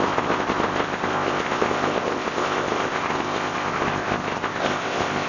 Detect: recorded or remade remade